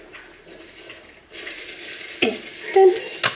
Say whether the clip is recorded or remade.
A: recorded